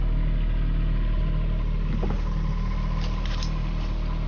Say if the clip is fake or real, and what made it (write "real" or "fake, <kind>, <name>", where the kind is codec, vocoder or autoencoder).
real